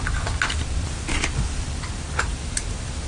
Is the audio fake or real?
real